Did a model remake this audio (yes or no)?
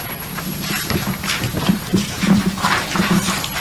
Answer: yes